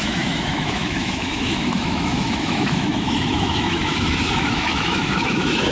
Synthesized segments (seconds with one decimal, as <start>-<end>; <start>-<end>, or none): 0.0-5.7